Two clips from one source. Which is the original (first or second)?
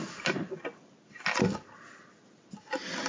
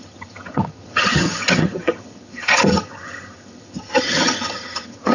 first